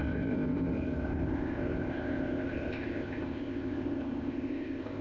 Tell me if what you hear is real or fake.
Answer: fake